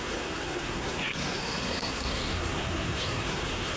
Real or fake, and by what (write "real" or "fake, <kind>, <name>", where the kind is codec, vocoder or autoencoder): fake, codec, SNAC